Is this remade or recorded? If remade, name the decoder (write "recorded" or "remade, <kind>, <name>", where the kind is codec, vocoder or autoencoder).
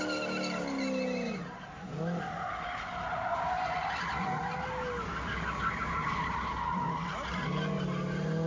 recorded